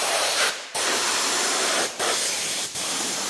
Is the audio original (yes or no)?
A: no